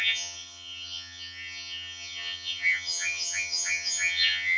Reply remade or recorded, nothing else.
remade